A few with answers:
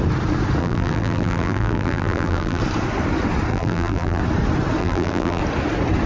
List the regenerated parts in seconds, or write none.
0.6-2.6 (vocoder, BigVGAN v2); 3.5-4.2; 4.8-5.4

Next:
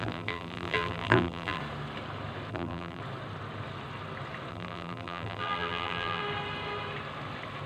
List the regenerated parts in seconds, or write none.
0.0-1.6 (vocoder, BigVGAN v2); 2.5-3.0; 4.5-6.2

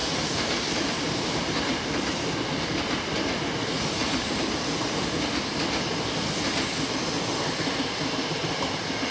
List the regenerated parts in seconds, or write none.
0.0-0.9 (vocoder, BigVGAN v2); 4.0-4.8